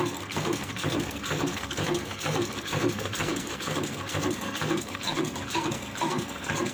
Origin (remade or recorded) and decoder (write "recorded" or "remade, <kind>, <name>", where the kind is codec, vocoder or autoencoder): remade, codec, SNAC